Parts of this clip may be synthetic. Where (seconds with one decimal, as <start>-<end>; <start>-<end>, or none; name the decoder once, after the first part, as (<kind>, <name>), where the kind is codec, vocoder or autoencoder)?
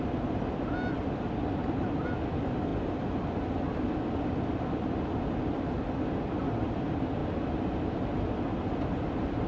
none